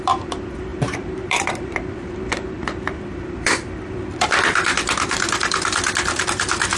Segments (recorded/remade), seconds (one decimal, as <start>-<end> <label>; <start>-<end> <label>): 0.0-6.8 remade